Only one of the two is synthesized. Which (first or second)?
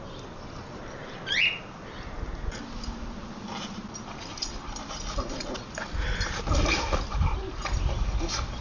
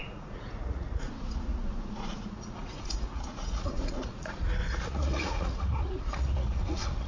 second